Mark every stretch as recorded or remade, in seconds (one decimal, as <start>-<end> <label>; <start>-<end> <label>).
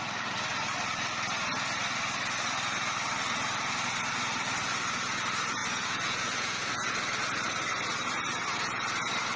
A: 0.0-5.6 recorded; 5.6-6.9 remade; 6.9-9.4 recorded